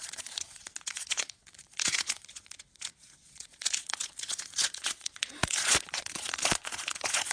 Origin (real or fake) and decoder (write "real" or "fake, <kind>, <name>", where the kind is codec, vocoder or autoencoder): fake, vocoder, Vocos